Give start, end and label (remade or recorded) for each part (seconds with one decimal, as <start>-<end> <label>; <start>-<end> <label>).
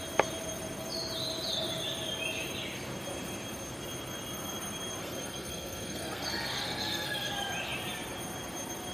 0.0-5.0 recorded; 5.0-7.3 remade; 7.3-8.9 recorded